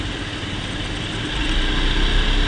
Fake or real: real